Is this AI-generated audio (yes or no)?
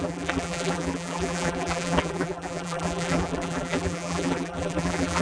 yes